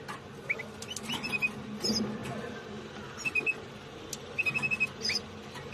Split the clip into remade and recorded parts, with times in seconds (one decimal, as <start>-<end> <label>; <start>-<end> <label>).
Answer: 0.0-5.7 recorded